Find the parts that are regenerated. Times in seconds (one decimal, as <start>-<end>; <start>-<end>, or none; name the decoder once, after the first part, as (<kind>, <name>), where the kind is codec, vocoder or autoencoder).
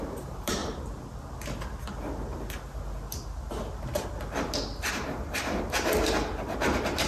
0.0-0.6 (vocoder, BigVGAN v2); 4.9-7.1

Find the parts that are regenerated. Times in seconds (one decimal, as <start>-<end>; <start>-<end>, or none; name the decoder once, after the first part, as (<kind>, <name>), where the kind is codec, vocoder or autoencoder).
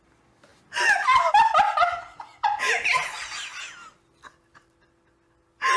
none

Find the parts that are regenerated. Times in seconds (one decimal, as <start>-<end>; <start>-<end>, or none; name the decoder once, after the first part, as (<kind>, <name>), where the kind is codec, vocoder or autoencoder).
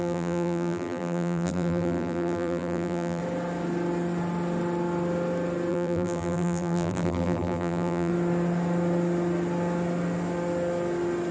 0.0-3.2 (vocoder, BigVGAN v2); 5.7-8.1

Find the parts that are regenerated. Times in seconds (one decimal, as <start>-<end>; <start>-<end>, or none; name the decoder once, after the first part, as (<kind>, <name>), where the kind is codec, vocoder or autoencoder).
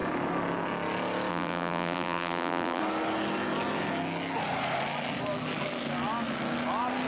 1.3-2.8 (vocoder, BigVGAN v2)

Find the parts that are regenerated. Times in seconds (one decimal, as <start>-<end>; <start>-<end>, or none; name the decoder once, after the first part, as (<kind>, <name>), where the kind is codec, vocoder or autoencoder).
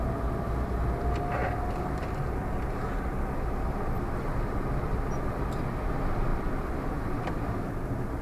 none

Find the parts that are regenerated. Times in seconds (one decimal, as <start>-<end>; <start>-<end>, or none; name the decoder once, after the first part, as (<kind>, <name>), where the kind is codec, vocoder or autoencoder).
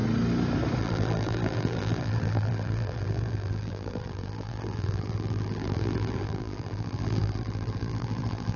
0.8-8.6 (vocoder, BigVGAN v2)